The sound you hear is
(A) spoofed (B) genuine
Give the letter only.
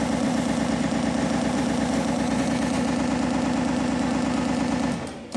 B